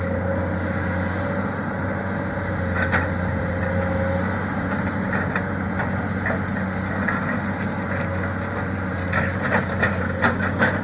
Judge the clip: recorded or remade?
recorded